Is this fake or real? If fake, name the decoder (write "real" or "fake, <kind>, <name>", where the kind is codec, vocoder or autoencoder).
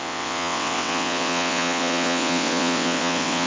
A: fake, vocoder, WaveNeXt